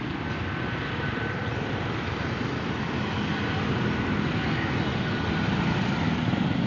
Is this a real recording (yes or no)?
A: yes